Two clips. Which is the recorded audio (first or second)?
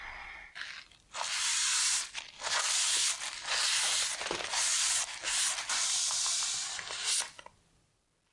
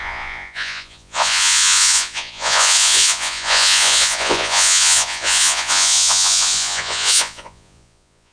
first